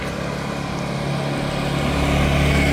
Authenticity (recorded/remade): recorded